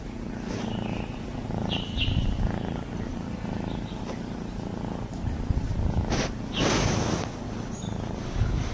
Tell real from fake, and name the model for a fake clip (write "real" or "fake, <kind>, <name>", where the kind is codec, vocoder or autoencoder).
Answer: real